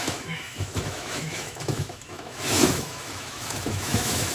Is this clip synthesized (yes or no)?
yes